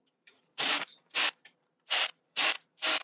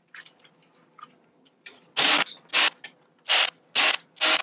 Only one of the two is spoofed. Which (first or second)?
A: first